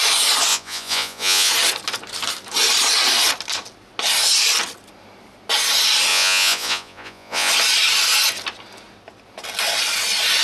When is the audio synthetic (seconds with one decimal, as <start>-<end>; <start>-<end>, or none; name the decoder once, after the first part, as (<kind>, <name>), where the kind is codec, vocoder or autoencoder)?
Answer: 0.5-1.5 (vocoder, Vocos); 6.1-7.5